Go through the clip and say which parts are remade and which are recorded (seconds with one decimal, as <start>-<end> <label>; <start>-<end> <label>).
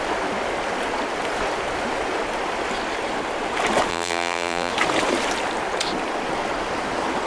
0.0-3.9 recorded; 3.9-4.7 remade; 4.7-7.3 recorded